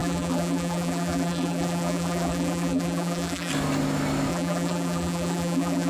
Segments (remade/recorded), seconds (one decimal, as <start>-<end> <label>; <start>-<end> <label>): 0.0-3.5 remade; 3.5-4.3 recorded; 4.3-5.9 remade